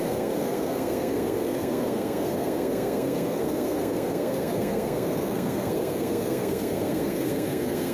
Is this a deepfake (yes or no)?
yes